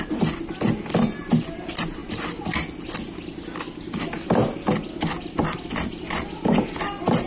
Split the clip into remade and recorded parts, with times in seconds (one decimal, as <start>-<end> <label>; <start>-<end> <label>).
0.0-7.3 recorded